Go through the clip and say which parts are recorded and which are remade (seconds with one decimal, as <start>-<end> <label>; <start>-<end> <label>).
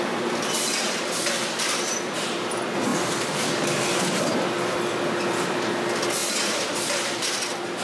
0.0-7.8 recorded